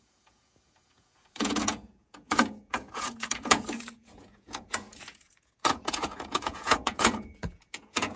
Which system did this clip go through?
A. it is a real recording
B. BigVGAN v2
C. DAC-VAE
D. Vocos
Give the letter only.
D